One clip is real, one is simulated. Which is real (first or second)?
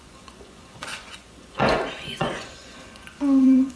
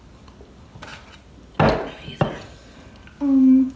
second